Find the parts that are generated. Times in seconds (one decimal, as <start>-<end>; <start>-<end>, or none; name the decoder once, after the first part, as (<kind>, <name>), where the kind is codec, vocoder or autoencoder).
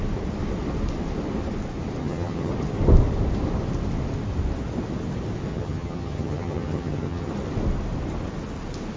2.0-2.5 (vocoder, HiFi-GAN); 5.5-7.3